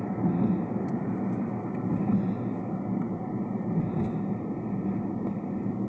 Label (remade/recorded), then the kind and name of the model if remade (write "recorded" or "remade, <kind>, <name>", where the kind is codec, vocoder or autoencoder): recorded